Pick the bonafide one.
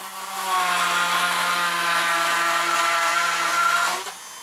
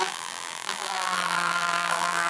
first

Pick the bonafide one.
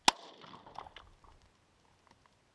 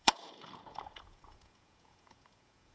first